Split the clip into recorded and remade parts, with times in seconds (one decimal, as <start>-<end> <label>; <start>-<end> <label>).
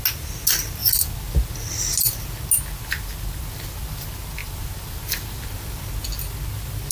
0.0-6.9 recorded